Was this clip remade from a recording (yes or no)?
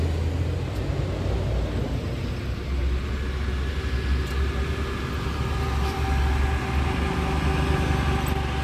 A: no